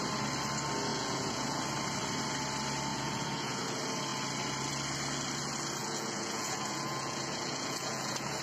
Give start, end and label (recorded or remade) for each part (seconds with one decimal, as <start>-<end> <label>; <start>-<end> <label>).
0.0-0.9 recorded; 0.9-1.6 remade; 1.6-2.9 recorded; 2.9-3.6 remade; 3.6-5.8 recorded; 5.8-8.4 remade